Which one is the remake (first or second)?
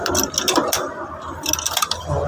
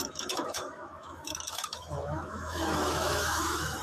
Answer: second